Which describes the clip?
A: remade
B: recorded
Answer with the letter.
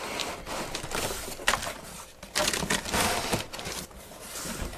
B